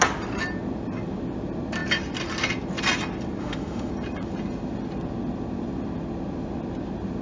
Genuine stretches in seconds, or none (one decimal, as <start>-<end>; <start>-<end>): 0.0-3.4; 3.9-7.2